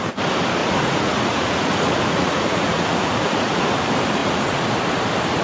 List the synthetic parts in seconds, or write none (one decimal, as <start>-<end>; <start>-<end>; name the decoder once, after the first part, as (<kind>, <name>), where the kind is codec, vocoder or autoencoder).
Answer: 0.6-3.6 (vocoder, Vocos); 4.2-4.7